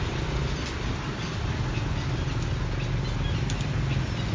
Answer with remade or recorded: recorded